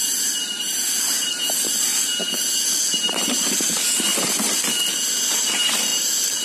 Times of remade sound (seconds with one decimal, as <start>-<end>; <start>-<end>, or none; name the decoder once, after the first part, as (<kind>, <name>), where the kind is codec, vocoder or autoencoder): 0.0-1.9 (vocoder, BigVGAN v2); 2.8-4.1; 5.5-6.4